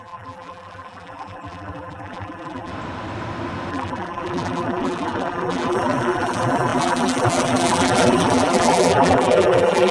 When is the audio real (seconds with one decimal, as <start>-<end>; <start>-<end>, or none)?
2.7-3.7